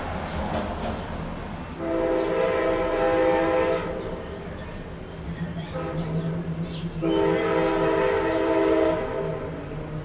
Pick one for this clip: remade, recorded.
recorded